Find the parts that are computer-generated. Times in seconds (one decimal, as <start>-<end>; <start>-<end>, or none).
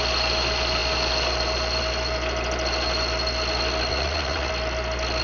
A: 3.9-4.5